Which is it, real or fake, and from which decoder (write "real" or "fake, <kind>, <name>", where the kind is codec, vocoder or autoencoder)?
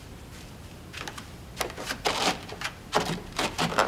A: fake, vocoder, BigVGAN v2